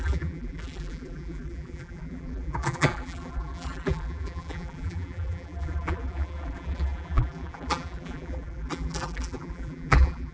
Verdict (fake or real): fake